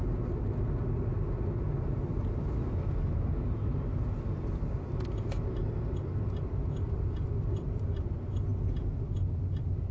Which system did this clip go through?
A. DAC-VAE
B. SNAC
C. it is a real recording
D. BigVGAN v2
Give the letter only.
C